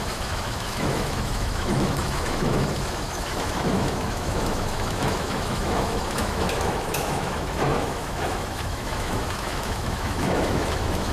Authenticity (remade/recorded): remade